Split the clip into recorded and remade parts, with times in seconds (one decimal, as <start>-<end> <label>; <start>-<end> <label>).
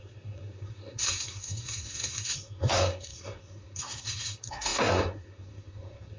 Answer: 0.0-6.2 remade